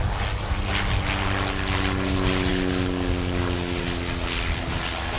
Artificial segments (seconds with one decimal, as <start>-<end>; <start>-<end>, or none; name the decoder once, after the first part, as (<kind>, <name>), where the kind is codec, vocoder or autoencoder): none